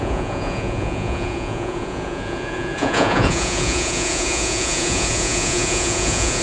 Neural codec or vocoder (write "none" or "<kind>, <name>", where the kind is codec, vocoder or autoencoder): vocoder, Vocos